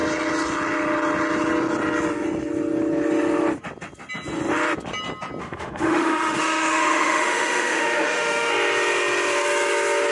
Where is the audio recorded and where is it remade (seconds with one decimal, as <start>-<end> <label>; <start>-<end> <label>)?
0.0-5.4 recorded; 5.4-8.5 remade; 8.5-10.1 recorded